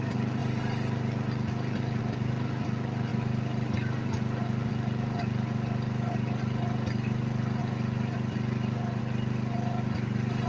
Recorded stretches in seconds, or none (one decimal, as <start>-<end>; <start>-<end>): 0.0-10.5